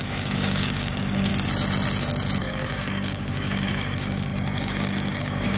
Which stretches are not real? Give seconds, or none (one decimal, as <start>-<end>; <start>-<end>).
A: 0.0-1.3; 2.4-5.6